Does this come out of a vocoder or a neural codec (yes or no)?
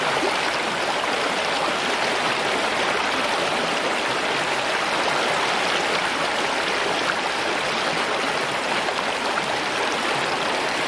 no